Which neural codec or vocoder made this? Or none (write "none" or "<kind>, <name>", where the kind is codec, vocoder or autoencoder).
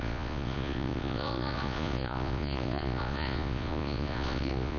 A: vocoder, Vocos